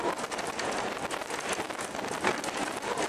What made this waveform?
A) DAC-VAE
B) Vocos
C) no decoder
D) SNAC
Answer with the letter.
C